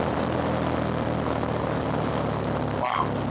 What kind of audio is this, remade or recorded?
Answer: recorded